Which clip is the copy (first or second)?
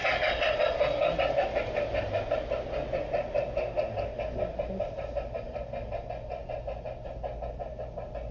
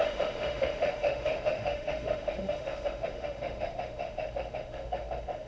second